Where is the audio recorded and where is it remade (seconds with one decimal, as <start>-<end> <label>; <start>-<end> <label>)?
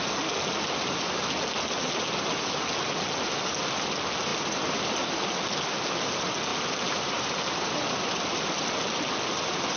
0.0-4.3 recorded; 4.3-5.0 remade; 5.0-6.5 recorded; 6.5-7.7 remade; 7.7-9.8 recorded